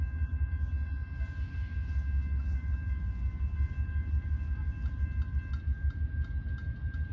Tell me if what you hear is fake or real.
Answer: real